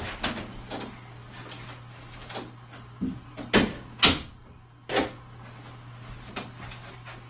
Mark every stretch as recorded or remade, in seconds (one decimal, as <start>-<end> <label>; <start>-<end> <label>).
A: 0.0-7.3 recorded